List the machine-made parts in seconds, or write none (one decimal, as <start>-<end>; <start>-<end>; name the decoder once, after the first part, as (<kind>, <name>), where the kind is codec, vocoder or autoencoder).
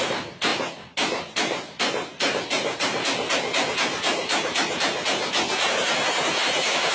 none